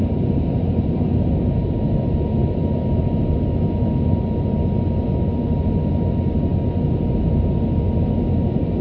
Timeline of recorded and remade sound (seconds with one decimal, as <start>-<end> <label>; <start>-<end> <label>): 0.0-8.8 recorded